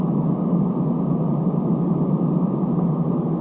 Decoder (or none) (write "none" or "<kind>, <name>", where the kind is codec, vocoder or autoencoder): none